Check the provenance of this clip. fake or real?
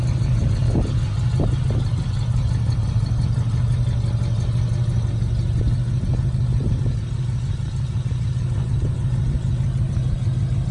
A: real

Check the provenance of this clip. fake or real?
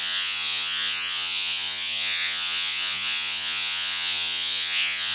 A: fake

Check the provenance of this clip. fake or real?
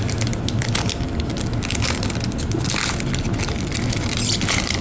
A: real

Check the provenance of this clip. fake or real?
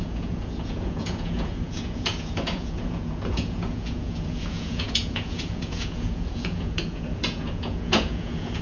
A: fake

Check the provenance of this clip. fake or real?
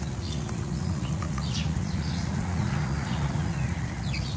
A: fake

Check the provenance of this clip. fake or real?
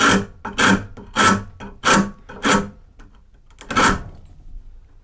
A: real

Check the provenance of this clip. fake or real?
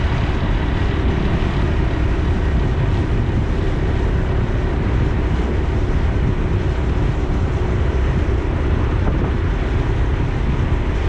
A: real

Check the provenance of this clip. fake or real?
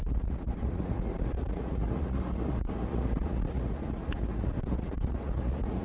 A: fake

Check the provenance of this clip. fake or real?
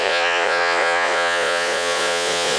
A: fake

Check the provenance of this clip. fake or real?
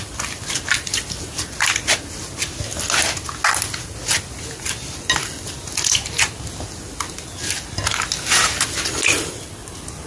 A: real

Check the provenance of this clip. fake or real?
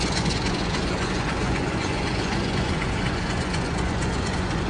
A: fake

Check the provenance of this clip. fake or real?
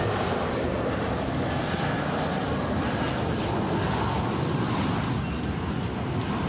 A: real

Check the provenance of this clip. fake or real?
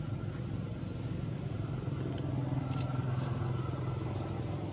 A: real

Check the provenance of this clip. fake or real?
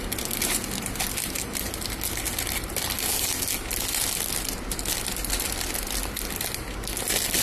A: real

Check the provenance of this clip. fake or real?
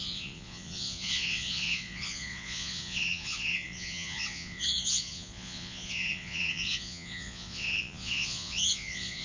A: fake